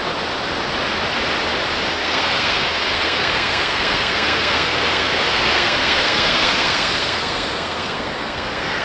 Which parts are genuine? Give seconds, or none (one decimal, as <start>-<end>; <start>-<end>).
0.0-1.9